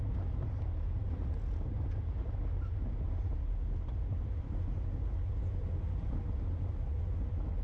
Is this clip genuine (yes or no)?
yes